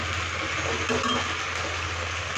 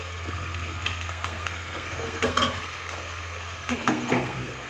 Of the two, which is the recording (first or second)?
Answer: first